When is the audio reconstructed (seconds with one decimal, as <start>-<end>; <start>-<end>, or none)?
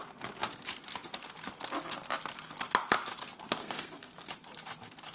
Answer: 3.6-4.3